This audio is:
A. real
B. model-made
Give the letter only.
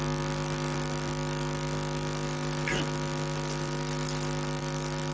A